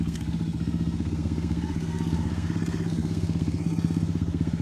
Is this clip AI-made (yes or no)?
yes